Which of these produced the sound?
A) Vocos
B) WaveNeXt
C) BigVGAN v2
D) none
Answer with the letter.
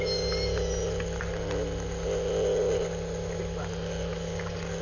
D